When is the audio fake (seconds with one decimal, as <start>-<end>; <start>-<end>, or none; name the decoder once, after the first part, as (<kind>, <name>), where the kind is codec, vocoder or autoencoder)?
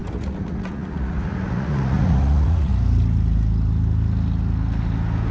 0.0-2.7 (vocoder, Vocos)